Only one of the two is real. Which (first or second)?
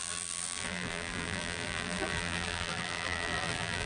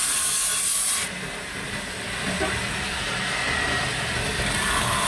second